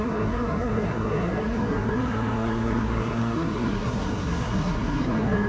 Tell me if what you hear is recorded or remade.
remade